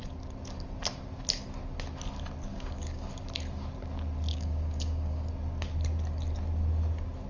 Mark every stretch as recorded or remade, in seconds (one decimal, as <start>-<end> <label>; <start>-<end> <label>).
0.0-2.5 recorded; 2.5-3.1 remade; 3.1-4.3 recorded; 4.3-5.3 remade; 5.3-7.3 recorded